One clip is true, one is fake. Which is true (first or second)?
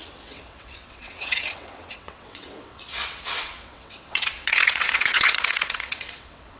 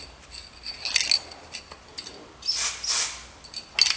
second